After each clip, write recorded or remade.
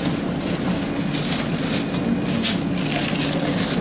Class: recorded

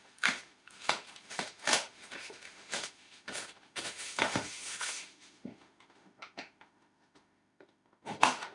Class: remade